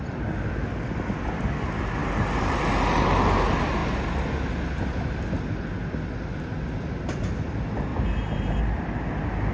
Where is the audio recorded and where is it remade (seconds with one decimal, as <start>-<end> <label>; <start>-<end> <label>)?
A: 0.0-2.0 recorded; 2.0-2.6 remade; 2.6-7.9 recorded; 7.9-8.6 remade; 8.6-9.5 recorded